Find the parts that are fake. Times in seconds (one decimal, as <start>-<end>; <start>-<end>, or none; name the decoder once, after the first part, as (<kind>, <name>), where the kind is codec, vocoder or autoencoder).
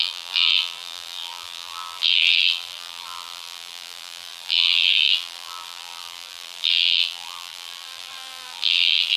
0.0-9.2 (vocoder, BigVGAN v2)